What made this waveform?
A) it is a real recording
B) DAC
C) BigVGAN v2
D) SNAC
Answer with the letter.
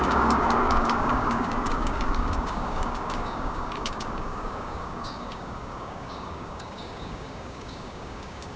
B